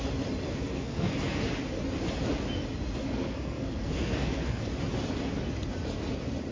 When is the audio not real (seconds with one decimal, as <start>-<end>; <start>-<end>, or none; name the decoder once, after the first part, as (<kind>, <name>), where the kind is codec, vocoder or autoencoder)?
0.5-1.5 (codec, SNAC); 3.0-4.6